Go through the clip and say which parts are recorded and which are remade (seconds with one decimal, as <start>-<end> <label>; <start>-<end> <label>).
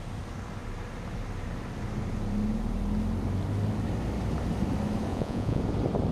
0.0-5.1 recorded; 5.1-5.6 remade; 5.6-6.1 recorded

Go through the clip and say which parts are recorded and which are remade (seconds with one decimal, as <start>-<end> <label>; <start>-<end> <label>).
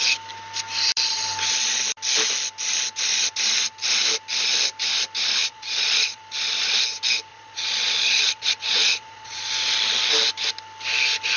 0.0-5.4 recorded; 5.4-6.2 remade; 6.2-7.3 recorded; 7.3-9.5 remade; 9.5-11.4 recorded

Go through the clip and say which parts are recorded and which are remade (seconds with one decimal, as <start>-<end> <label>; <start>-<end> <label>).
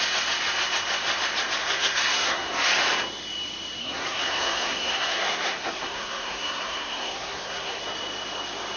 0.0-1.6 recorded; 1.6-2.5 remade; 2.5-3.8 recorded; 3.8-7.8 remade; 7.8-8.8 recorded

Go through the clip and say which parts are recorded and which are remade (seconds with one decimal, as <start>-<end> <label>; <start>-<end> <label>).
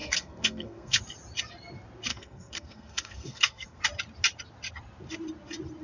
0.0-1.0 remade; 1.0-2.1 recorded; 2.1-3.8 remade; 3.8-5.8 recorded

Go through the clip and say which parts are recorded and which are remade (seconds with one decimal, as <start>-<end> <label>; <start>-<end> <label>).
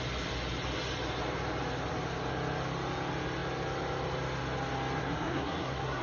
0.0-5.0 recorded; 5.0-6.0 remade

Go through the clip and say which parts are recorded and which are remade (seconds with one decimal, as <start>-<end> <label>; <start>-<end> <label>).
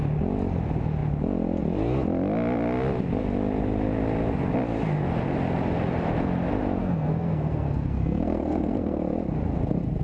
0.0-6.8 recorded; 6.8-9.0 remade; 9.0-10.0 recorded